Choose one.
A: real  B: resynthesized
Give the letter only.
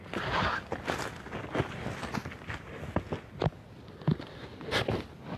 A